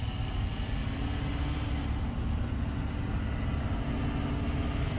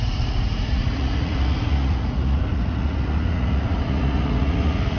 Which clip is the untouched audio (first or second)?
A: first